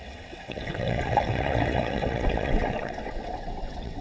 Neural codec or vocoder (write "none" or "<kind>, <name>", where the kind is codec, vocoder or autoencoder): vocoder, WaveNeXt